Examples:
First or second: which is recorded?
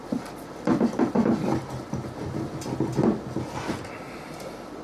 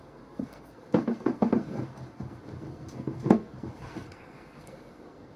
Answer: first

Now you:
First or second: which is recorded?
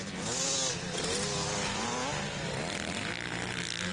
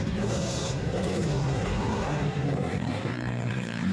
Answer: first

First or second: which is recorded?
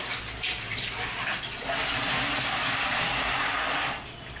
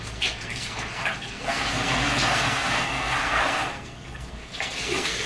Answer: first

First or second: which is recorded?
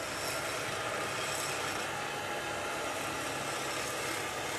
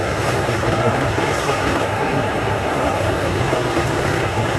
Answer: first